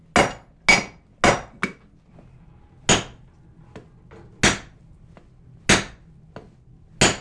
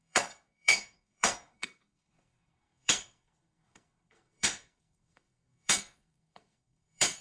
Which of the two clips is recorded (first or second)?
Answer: first